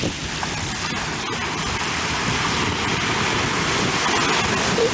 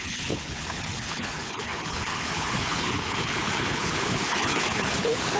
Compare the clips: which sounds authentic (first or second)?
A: first